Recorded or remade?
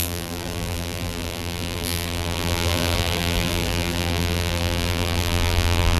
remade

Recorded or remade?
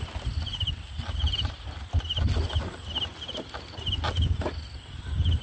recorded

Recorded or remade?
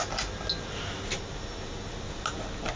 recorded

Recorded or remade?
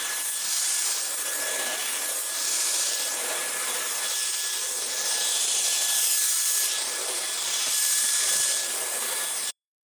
remade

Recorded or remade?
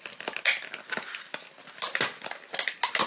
recorded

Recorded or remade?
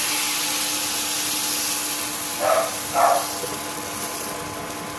recorded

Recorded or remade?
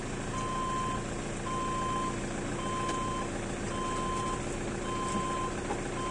recorded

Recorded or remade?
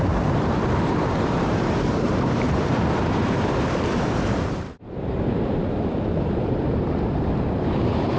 remade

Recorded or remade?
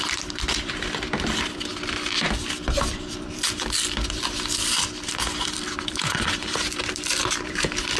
remade